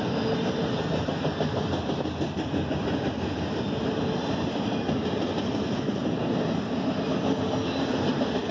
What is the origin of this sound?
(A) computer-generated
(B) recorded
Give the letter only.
B